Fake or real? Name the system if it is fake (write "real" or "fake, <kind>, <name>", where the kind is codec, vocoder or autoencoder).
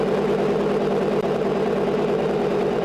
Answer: fake, vocoder, BigVGAN v2